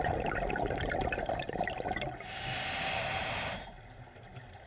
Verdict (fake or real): real